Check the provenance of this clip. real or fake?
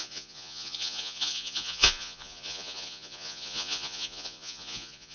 fake